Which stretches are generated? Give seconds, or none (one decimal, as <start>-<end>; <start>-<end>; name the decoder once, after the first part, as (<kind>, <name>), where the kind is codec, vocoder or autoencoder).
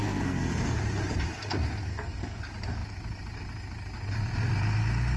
0.0-0.8 (codec, SNAC); 1.9-2.4